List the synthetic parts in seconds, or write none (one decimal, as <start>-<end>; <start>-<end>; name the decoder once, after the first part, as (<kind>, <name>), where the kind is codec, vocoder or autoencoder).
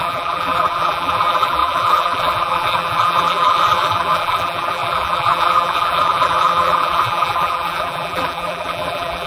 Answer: 0.0-9.3 (vocoder, BigVGAN v2)